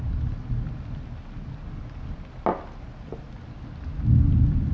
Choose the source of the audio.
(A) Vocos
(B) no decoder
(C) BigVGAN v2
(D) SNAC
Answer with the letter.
B